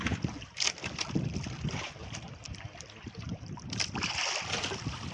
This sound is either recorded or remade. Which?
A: remade